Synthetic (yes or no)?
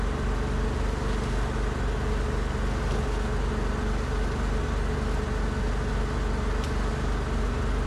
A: no